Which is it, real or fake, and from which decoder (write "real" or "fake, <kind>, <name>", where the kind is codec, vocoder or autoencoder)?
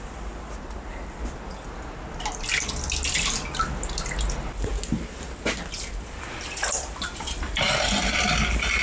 real